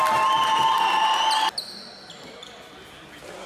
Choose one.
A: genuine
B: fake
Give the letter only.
A